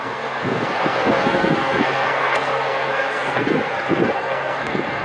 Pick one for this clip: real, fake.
fake